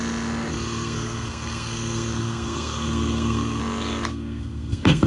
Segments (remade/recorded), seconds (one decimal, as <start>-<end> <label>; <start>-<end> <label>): 0.0-0.5 recorded; 0.5-3.6 remade; 3.6-4.1 recorded; 4.1-5.1 remade